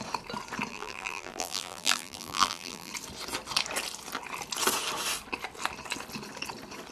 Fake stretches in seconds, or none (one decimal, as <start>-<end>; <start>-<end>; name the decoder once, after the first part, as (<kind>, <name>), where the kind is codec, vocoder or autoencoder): 0.7-2.9 (vocoder, BigVGAN v2)